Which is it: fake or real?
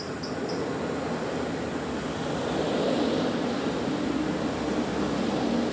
real